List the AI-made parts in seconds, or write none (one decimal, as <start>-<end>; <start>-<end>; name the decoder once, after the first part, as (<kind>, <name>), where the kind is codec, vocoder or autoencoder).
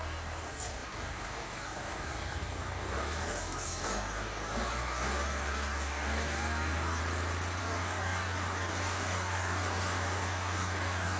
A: 0.0-7.0 (codec, DAC); 7.6-11.2